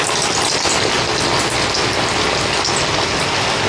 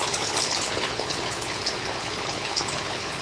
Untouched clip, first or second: first